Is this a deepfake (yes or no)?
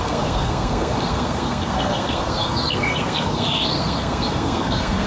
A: yes